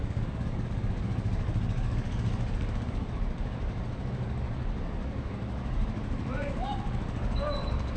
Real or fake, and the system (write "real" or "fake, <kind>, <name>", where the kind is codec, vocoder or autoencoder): fake, codec, DAC